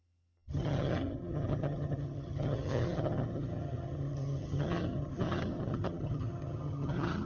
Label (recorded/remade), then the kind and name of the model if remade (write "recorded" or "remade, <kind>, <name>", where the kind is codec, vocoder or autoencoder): remade, vocoder, HiFi-GAN